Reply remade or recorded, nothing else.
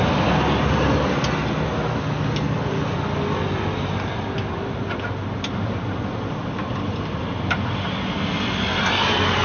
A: recorded